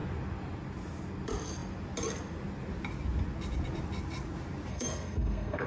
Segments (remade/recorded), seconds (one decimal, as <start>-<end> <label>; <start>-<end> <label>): 0.0-4.7 recorded; 4.7-5.7 remade